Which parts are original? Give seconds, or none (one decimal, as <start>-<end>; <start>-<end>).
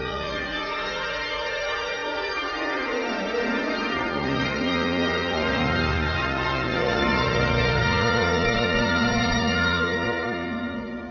none